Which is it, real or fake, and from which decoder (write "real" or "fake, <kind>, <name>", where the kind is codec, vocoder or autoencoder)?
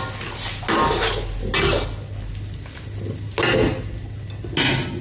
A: real